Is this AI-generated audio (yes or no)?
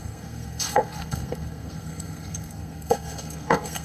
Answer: yes